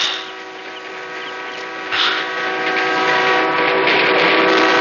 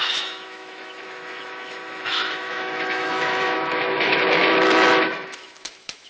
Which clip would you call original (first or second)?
first